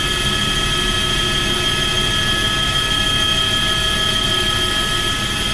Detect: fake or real real